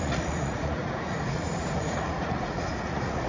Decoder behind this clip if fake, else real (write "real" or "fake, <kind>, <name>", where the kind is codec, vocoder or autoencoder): fake, vocoder, Vocos